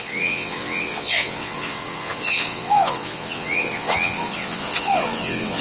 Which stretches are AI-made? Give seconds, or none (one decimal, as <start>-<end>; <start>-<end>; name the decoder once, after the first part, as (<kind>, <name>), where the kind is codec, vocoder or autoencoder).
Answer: 0.0-5.6 (vocoder, WaveNeXt)